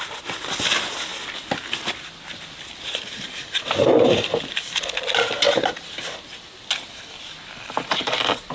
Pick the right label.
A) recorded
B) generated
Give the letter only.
A